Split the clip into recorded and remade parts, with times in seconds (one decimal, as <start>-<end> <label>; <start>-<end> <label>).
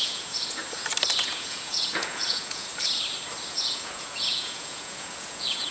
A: 0.0-0.6 remade; 0.6-1.2 recorded; 1.2-2.7 remade; 2.7-3.5 recorded; 3.5-5.7 remade